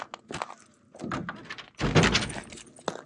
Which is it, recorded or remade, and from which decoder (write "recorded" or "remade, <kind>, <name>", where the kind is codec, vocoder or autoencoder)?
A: recorded